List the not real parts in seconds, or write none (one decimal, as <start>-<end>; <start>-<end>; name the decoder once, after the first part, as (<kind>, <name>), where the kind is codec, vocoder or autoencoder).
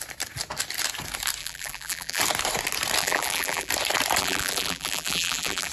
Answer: 1.4-2.2 (vocoder, BigVGAN v2); 3.0-3.7; 4.2-5.7